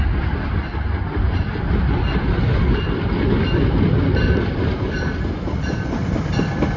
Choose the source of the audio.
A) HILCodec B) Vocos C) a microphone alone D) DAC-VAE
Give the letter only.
C